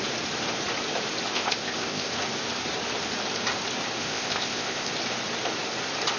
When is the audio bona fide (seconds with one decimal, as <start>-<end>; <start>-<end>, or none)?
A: 0.0-1.3; 2.1-4.0; 4.9-6.2